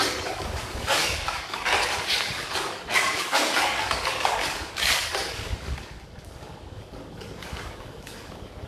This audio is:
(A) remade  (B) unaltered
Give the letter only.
A